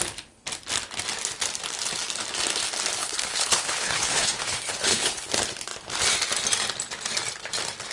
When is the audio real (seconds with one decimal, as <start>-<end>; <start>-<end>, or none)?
0.0-3.0; 5.3-7.9